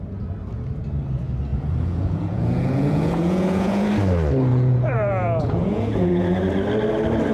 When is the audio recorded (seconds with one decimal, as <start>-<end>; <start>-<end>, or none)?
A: 0.0-1.5; 3.9-4.5; 6.4-7.3